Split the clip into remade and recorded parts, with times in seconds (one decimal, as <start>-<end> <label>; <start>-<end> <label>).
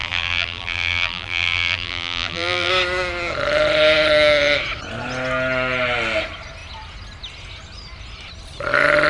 0.0-2.7 remade; 2.7-9.1 recorded